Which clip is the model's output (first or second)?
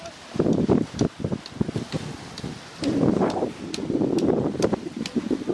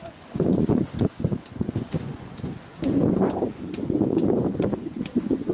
second